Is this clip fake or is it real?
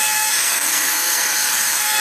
fake